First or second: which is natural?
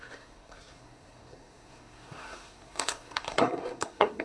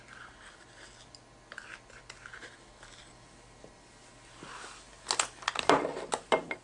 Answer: second